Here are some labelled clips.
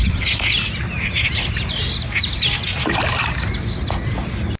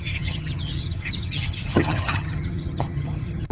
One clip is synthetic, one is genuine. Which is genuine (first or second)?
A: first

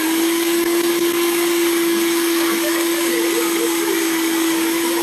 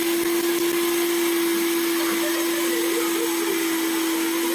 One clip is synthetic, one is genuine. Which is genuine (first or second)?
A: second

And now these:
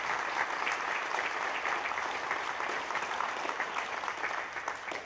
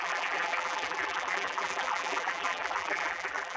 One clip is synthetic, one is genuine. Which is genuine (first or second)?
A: first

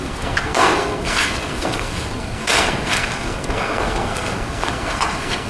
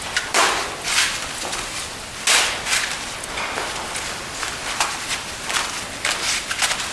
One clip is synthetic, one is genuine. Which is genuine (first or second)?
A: second